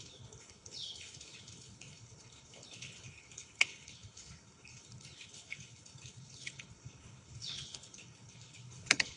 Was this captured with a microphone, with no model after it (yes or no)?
no